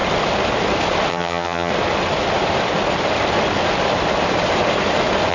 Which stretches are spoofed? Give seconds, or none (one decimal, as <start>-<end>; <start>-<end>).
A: 1.1-1.7